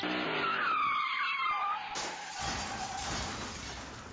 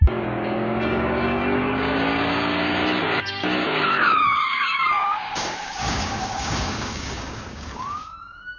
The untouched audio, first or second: first